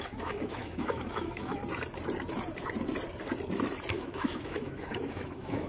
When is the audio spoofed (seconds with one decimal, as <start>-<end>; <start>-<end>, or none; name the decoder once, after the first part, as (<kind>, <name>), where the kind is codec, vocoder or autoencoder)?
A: 0.0-1.6 (autoencoder, DAC-VAE); 3.9-5.7